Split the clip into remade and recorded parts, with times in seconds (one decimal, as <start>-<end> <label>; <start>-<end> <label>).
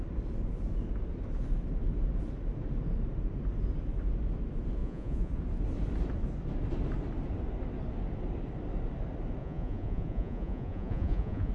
0.0-4.8 recorded; 4.8-5.3 remade; 5.3-9.4 recorded; 9.4-11.5 remade